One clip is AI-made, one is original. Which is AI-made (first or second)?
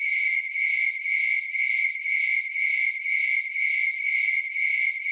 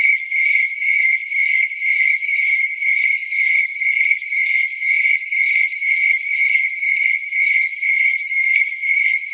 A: second